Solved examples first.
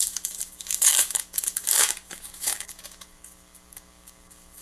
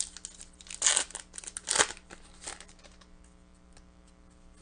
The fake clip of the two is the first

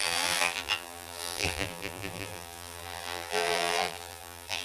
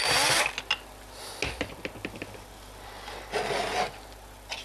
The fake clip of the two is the first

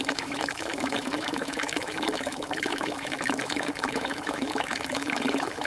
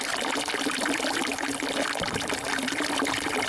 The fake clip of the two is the first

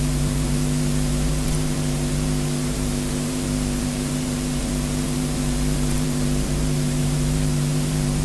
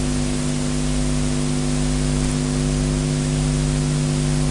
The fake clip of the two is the first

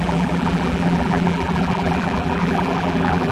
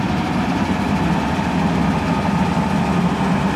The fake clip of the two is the first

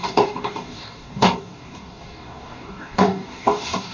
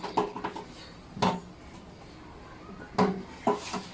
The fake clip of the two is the first